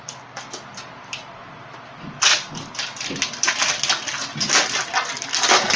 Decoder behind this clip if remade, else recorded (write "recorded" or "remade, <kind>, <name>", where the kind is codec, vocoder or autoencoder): recorded